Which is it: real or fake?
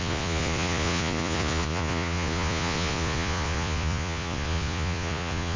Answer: fake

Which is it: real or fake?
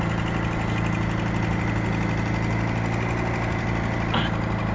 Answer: real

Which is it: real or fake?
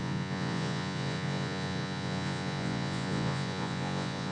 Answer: fake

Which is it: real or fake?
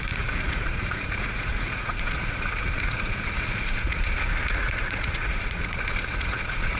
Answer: fake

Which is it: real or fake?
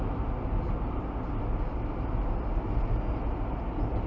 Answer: real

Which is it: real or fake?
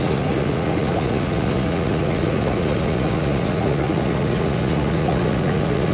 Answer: fake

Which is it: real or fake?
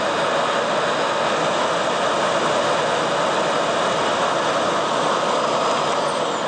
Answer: real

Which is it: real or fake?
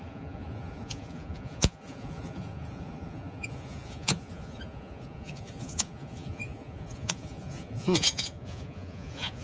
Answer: fake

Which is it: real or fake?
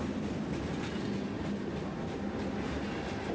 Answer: real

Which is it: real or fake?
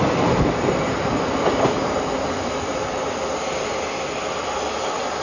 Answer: real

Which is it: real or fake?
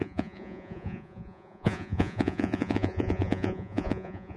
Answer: fake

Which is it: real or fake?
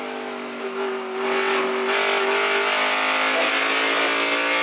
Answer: real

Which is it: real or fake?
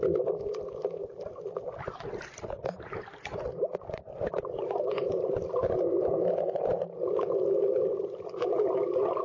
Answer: real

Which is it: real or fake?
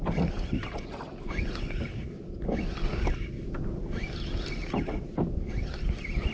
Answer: real